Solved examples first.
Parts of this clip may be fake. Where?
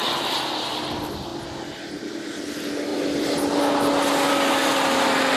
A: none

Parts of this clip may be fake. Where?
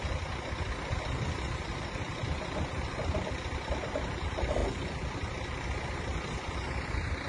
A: none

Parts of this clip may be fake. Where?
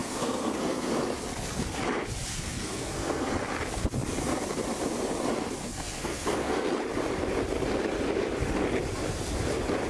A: 0.0-0.9 (codec, SNAC); 2.3-3.3; 5.6-6.7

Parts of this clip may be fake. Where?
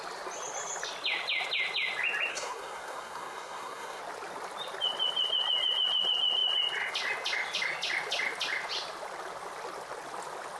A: 2.3-4.0 (codec, SNAC)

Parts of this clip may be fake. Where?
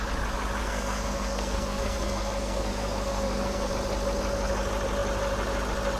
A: 0.6-3.7 (codec, SNAC)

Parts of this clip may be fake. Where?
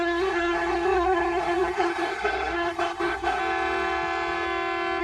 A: 0.0-3.4 (codec, SNAC)